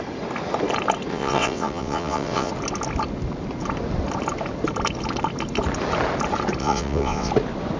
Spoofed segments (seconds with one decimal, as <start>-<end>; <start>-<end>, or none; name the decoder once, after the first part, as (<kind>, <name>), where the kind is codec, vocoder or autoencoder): 1.1-2.5 (vocoder, WaveNeXt); 6.6-7.3